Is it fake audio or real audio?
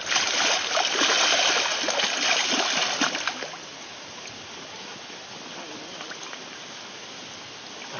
real